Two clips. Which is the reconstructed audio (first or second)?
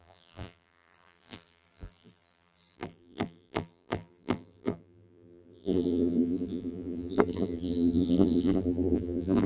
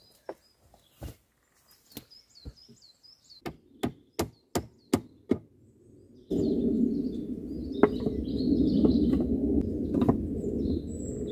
first